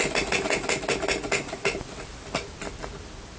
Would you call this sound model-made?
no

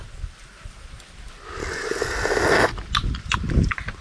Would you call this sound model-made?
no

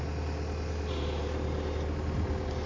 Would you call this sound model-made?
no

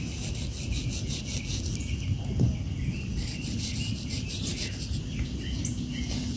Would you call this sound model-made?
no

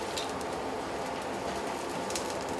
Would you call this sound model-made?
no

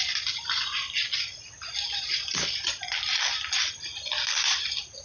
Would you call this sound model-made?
no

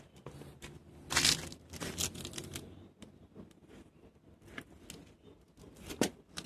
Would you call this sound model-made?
no